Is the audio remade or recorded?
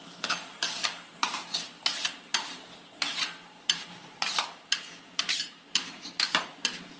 remade